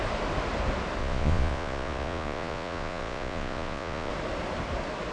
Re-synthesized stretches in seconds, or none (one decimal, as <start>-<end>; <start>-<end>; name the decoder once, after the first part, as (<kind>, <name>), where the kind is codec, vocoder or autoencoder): 1.0-4.1 (vocoder, Vocos)